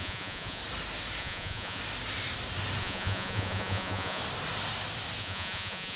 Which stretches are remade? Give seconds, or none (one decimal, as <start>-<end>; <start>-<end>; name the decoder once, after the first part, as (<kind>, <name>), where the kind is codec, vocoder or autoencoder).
0.0-0.6 (vocoder, Vocos); 1.2-1.8; 2.8-4.2; 5.2-6.0